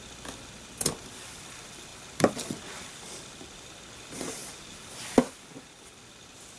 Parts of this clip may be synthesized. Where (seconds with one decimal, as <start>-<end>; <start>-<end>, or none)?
none